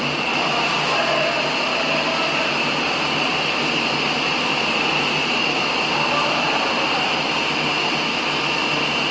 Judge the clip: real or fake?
real